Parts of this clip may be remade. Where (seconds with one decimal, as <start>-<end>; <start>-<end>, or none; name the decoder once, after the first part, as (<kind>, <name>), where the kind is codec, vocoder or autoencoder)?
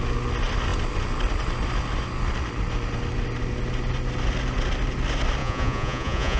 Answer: 5.4-6.4 (vocoder, Vocos)